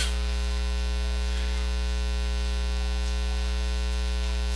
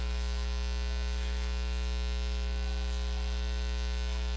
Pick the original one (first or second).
first